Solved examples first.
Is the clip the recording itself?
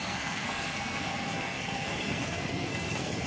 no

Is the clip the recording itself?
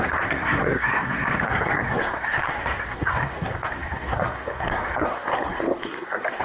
no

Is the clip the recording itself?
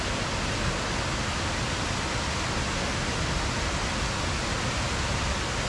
yes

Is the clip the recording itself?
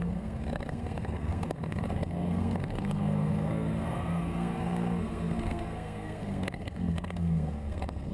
no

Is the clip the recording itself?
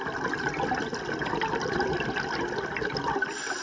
yes